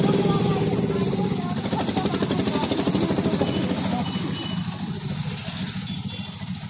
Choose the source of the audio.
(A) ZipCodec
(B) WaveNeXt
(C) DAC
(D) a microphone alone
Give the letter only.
D